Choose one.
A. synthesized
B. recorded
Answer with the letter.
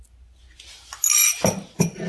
B